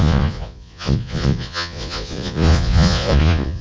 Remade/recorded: remade